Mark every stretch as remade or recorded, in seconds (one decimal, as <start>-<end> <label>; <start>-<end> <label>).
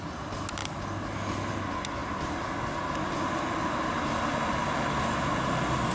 0.0-5.9 recorded